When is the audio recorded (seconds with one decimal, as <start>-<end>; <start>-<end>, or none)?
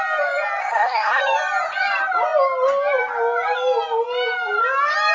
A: 0.0-0.6; 1.2-5.1